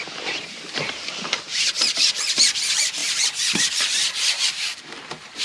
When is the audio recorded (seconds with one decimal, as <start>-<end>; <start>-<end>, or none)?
1.5-2.1; 3.0-3.7